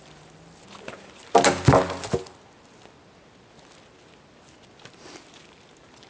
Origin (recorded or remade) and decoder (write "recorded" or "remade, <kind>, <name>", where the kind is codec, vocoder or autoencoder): recorded